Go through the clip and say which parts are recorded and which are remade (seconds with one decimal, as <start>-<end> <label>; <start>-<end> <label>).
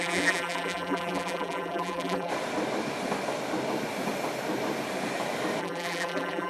0.0-2.3 remade; 2.3-5.6 recorded; 5.6-6.5 remade